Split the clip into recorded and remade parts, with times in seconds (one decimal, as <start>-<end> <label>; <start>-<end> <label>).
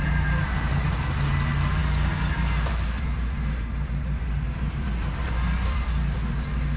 0.0-6.8 recorded